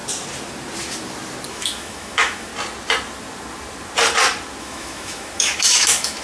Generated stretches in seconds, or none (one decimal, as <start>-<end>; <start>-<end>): 1.5-2.5; 4.6-6.2